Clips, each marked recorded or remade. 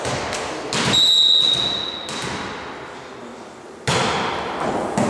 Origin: recorded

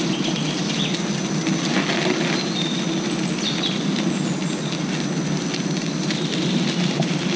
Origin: recorded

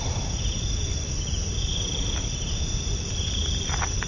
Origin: recorded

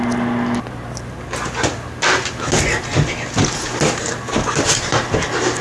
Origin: recorded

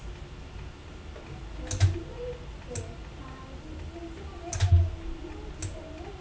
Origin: recorded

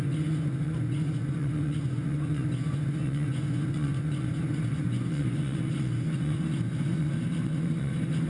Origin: remade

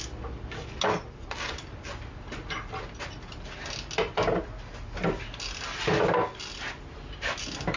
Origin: recorded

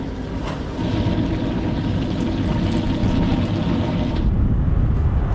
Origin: recorded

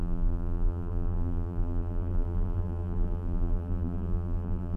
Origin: remade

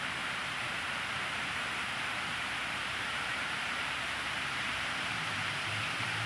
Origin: remade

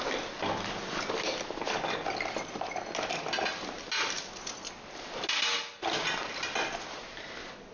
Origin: recorded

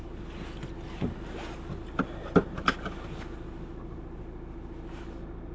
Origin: recorded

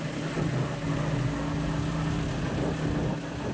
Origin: recorded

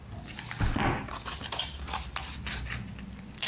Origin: recorded